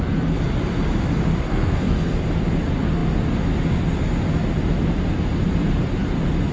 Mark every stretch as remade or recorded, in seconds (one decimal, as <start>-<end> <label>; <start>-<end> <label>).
0.0-1.5 recorded; 1.5-2.2 remade; 2.2-6.5 recorded